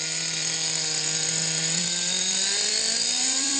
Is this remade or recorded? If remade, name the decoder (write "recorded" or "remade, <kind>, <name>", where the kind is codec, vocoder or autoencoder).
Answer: remade, vocoder, BigVGAN v2